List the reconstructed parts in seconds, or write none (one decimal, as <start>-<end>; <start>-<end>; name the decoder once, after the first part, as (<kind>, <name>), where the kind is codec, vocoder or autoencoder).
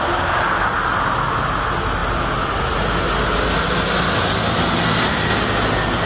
none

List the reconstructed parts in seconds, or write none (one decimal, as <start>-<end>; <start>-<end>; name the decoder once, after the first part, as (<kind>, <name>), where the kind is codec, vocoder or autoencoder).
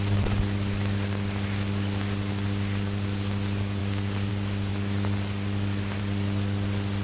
none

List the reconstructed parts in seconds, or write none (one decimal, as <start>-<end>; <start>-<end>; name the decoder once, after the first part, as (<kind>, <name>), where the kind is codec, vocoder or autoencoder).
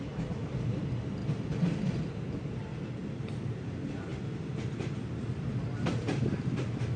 1.2-2.3 (vocoder, BigVGAN v2)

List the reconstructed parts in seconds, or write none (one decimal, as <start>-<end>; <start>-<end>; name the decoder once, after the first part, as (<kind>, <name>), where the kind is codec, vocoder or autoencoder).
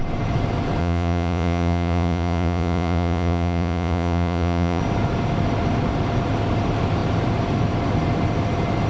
0.8-4.8 (vocoder, Vocos)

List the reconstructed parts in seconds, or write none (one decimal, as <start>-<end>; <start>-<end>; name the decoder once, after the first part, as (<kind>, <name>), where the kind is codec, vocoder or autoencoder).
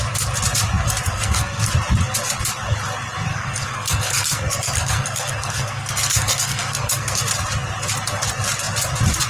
1.1-1.7 (codec, SNAC); 3.3-7.2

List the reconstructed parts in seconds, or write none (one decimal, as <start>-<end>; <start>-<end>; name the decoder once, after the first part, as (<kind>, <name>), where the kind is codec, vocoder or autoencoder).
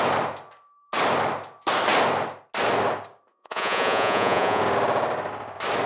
3.3-4.6 (vocoder, Vocos)